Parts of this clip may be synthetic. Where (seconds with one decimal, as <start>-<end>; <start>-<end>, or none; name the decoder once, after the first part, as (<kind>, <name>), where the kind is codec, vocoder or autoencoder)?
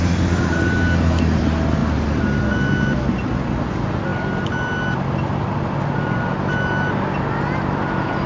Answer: none